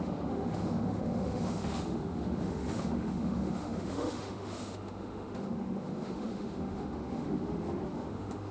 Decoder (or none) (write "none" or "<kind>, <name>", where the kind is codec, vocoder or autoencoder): autoencoder, DAC-VAE